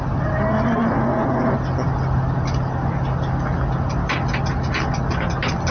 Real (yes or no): yes